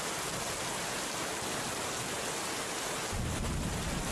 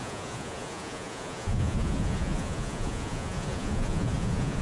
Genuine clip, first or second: first